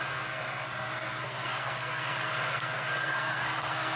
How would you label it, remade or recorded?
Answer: remade